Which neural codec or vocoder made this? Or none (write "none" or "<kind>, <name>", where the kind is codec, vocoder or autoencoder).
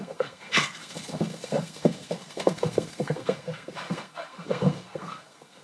codec, SNAC